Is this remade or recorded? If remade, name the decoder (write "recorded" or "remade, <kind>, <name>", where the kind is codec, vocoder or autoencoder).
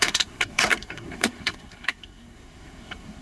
remade, codec, SNAC